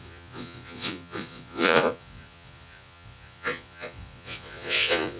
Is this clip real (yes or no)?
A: no